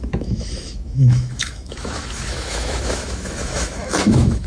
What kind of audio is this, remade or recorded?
remade